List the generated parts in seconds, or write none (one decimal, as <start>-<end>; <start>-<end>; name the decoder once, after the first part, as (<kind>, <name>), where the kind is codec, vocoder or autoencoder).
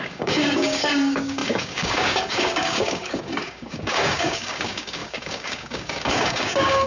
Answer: 0.0-6.9 (codec, DAC)